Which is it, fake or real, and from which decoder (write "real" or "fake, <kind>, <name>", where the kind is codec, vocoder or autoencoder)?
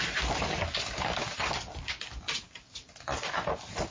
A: real